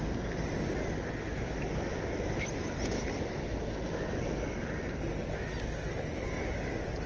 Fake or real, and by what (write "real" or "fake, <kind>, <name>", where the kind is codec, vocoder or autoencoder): real